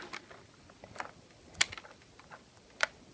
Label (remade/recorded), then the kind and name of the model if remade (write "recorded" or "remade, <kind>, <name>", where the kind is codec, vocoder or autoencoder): recorded